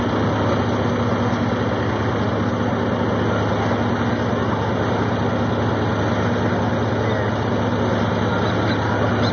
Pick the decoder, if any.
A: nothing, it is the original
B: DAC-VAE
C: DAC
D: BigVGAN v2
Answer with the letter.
A